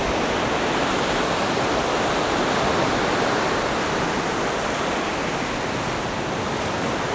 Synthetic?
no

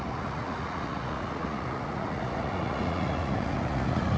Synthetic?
yes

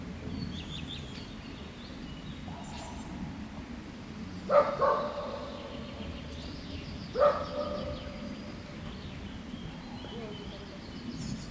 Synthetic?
no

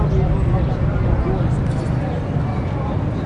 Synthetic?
no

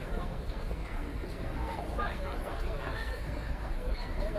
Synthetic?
yes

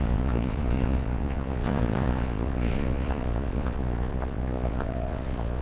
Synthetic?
yes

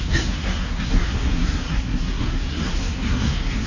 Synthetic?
yes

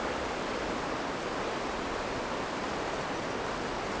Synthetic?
no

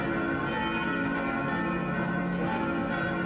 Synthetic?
no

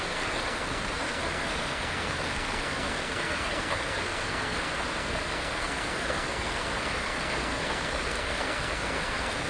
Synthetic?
yes